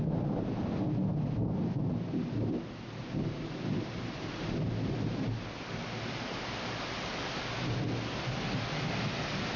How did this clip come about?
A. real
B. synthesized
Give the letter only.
A